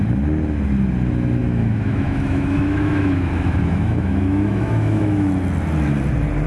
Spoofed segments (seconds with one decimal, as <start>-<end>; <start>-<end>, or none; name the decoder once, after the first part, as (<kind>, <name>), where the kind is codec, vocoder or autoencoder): 1.4-5.3 (autoencoder, DAC-VAE)